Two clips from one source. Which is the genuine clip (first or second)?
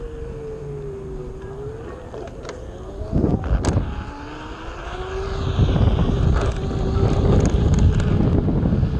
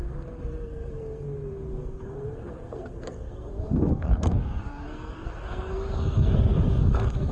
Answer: first